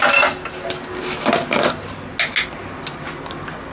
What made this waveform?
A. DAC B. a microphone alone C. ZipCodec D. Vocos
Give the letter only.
B